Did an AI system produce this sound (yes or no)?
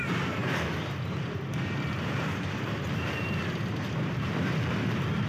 yes